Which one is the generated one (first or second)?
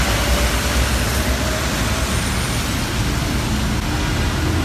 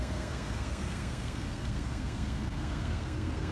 second